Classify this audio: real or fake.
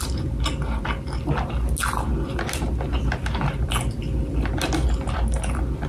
real